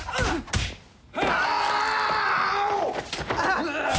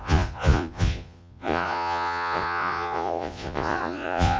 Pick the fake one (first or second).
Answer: second